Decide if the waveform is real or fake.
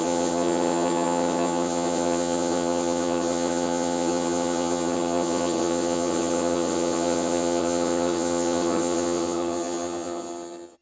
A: fake